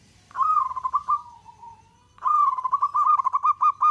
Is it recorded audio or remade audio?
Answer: remade